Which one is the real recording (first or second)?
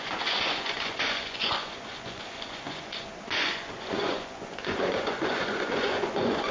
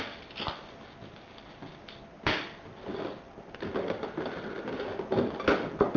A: second